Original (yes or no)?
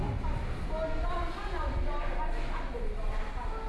yes